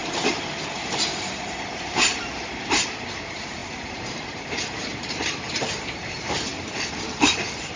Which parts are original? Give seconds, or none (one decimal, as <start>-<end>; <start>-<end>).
none